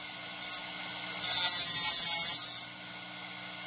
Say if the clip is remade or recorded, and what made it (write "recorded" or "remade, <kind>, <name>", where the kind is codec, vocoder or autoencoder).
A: recorded